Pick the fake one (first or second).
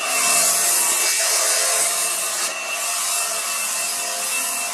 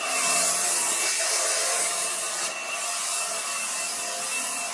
second